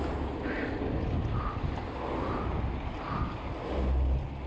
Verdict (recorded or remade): recorded